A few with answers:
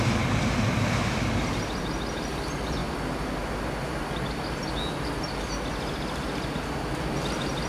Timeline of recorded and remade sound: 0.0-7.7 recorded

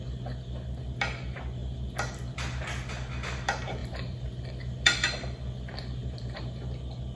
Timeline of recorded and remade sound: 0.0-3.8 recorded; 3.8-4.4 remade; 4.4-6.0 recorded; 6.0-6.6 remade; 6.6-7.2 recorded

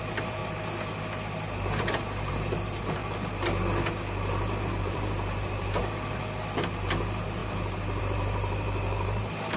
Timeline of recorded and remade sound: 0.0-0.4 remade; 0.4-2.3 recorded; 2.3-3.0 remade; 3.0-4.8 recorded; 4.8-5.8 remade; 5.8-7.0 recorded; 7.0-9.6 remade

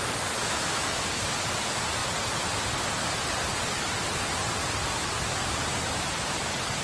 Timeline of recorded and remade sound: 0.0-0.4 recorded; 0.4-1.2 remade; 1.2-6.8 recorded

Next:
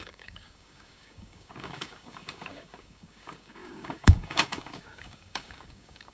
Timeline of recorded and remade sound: 0.0-6.1 remade

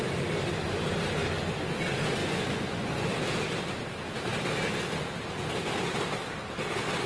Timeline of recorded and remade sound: 0.0-2.2 recorded; 2.2-3.1 remade; 3.1-7.1 recorded

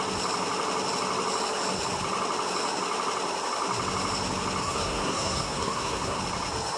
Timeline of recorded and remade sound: 0.0-4.6 recorded; 4.6-6.2 remade; 6.2-6.8 recorded

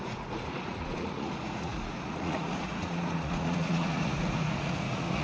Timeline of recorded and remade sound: 0.0-5.2 remade